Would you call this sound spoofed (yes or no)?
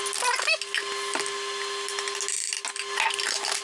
no